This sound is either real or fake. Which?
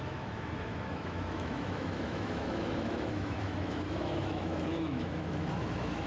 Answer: fake